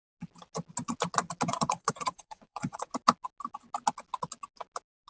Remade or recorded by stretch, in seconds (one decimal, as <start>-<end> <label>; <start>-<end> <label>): 0.0-1.5 recorded; 1.5-2.9 remade; 2.9-5.1 recorded